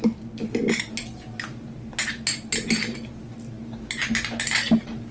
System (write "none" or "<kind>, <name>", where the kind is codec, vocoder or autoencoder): none